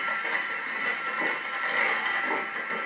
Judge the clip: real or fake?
real